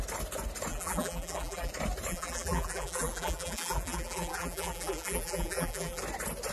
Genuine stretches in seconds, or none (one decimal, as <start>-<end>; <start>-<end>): 0.0-0.7; 1.7-2.1; 6.0-6.5